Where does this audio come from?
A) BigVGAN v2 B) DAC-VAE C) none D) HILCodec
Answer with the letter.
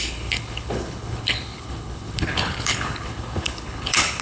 D